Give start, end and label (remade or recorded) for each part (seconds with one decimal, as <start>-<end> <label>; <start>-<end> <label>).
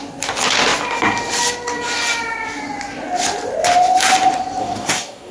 0.0-4.6 recorded; 4.6-5.3 remade